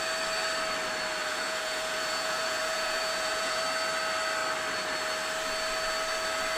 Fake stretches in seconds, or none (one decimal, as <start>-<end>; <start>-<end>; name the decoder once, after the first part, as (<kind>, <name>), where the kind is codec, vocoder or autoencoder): 1.2-3.6 (vocoder, Vocos)